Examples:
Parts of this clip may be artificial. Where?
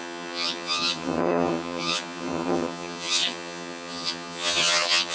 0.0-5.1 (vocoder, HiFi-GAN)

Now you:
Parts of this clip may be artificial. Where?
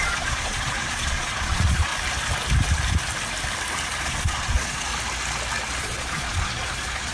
0.0-1.9 (vocoder, Vocos); 4.0-4.9; 5.8-7.1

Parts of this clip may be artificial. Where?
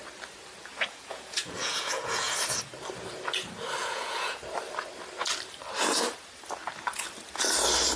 0.6-2.3 (vocoder, Vocos); 3.8-4.4